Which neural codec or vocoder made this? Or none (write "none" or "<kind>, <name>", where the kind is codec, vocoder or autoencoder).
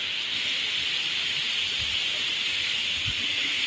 none